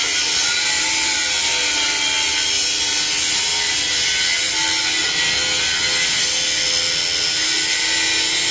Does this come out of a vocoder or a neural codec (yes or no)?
no